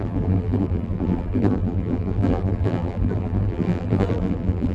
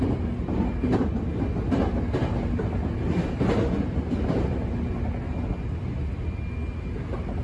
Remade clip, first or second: first